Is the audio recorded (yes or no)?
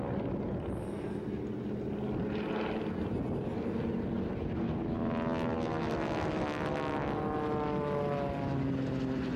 yes